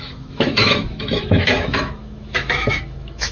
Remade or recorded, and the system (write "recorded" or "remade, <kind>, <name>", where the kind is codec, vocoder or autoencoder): remade, autoencoder, DAC-VAE